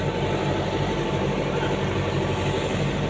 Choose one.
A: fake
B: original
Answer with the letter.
B